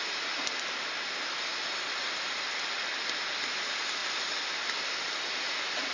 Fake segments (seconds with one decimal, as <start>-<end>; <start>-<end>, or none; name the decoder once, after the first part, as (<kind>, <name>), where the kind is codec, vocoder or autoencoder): none